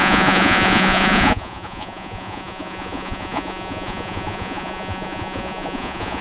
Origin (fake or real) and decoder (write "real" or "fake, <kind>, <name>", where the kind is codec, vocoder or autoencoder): fake, vocoder, Vocos